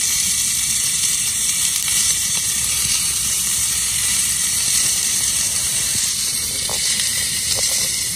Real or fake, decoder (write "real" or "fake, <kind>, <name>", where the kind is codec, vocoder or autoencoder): fake, vocoder, BigVGAN v2